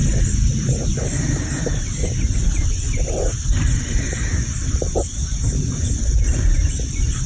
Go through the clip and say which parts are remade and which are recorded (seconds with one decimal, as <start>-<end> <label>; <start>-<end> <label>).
0.0-7.3 recorded

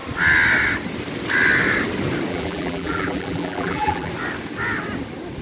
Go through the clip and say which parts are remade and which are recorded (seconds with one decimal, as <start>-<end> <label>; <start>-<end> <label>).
0.0-2.3 recorded; 2.3-4.1 remade; 4.1-5.4 recorded

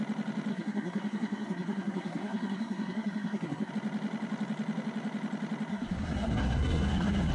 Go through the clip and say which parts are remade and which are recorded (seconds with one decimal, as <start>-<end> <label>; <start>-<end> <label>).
0.0-0.5 recorded; 0.5-3.7 remade; 3.7-5.7 recorded; 5.7-7.3 remade

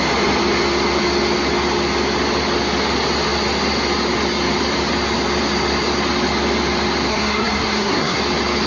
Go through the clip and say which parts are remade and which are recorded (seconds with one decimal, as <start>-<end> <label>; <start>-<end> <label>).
0.0-7.1 recorded; 7.1-8.2 remade; 8.2-8.7 recorded

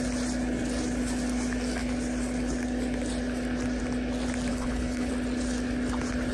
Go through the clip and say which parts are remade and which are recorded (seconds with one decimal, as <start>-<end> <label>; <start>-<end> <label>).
0.0-4.5 recorded; 4.5-5.1 remade; 5.1-6.3 recorded

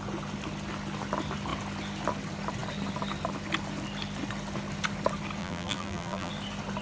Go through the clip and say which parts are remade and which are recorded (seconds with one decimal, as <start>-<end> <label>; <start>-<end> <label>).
0.0-5.4 recorded; 5.4-6.3 remade; 6.3-6.8 recorded

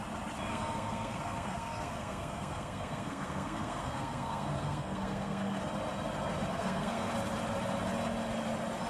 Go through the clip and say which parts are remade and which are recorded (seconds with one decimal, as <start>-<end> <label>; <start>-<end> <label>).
0.0-0.5 recorded; 0.5-5.6 remade; 5.6-6.5 recorded; 6.5-7.1 remade; 7.1-8.9 recorded

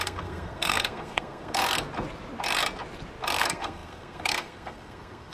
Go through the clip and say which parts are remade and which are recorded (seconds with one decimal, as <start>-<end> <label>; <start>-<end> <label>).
0.0-1.6 remade; 1.6-3.4 recorded; 3.4-5.3 remade